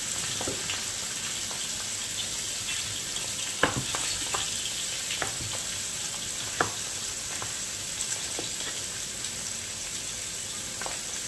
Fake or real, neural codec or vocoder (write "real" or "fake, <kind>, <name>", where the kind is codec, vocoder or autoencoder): real